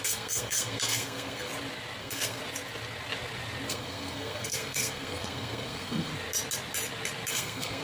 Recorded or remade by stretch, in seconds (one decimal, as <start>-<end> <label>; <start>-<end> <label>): 0.0-1.5 remade; 1.5-2.0 recorded; 2.0-2.4 remade; 2.4-3.7 recorded; 3.7-6.1 remade; 6.1-7.3 recorded; 7.3-7.8 remade